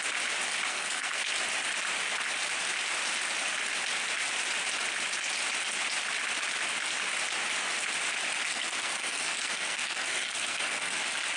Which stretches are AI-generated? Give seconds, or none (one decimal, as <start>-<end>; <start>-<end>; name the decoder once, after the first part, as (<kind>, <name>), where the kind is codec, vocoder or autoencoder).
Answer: 0.7-1.3 (codec, SNAC); 8.5-11.0

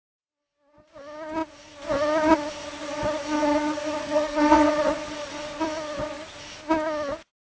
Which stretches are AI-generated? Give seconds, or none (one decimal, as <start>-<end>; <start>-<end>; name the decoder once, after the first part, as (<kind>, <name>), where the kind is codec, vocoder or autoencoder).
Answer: 4.0-4.7 (codec, SNAC)